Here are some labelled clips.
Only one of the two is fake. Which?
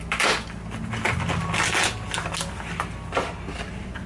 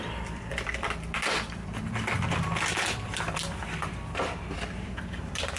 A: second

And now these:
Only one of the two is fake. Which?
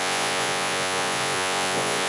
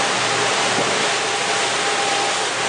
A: first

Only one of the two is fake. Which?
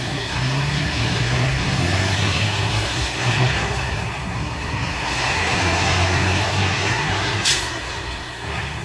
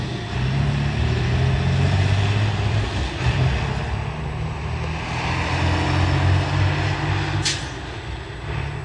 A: first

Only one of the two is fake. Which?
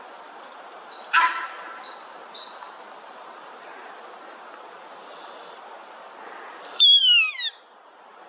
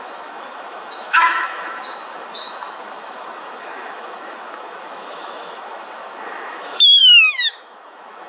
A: second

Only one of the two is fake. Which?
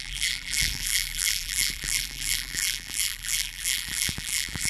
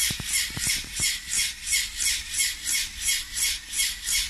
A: first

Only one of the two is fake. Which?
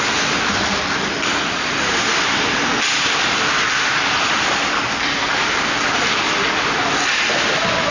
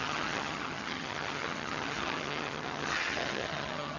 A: second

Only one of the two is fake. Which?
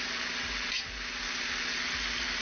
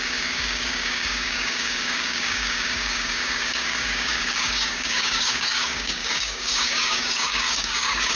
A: second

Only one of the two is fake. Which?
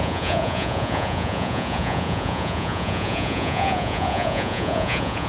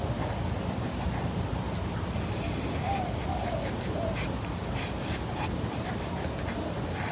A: first